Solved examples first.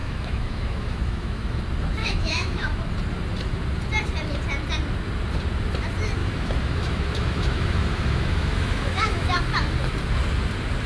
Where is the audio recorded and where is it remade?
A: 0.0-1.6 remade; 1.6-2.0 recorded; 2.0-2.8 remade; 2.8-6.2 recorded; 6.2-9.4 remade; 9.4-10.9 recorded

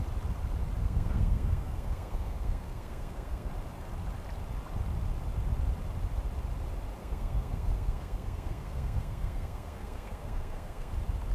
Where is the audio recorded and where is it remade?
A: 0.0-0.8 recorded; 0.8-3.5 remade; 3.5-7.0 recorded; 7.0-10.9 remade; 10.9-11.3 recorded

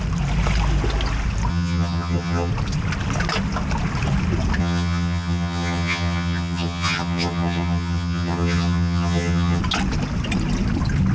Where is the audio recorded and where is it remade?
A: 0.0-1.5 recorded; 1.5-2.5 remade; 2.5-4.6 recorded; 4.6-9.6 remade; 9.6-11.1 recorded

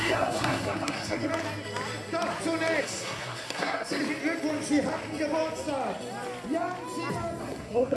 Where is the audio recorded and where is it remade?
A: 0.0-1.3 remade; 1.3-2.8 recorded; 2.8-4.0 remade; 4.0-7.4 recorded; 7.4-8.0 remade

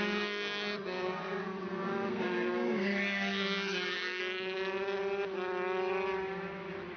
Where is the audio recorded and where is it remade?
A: 0.0-4.2 remade; 4.2-7.0 recorded

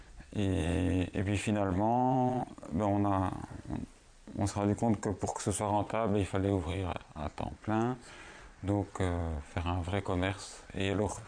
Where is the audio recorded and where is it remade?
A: 0.0-2.7 remade; 2.7-4.5 recorded; 4.5-11.3 remade

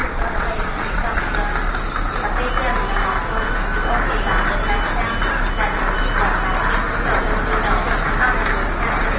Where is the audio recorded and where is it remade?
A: 0.0-1.2 remade; 1.2-9.2 recorded